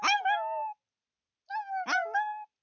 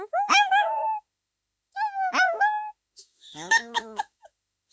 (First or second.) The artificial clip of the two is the second